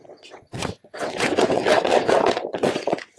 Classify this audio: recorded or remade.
remade